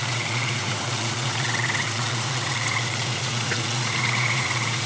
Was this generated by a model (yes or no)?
yes